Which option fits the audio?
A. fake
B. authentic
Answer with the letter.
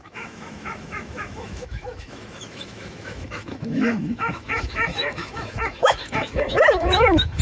A